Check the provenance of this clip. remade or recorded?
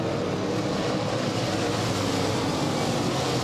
recorded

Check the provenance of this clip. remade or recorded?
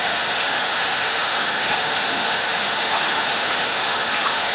remade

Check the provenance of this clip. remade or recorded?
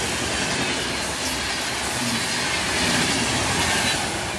recorded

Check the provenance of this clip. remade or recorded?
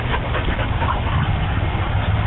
recorded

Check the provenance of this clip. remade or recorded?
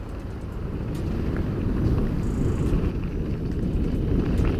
recorded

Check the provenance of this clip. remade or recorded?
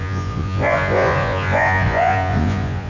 remade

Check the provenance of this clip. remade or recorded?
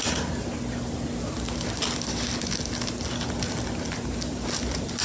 recorded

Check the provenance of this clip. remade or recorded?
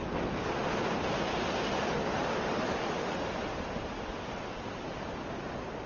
recorded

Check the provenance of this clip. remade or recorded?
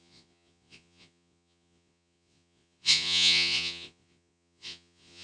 remade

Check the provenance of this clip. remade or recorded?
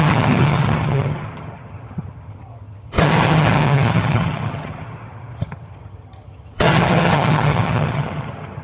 remade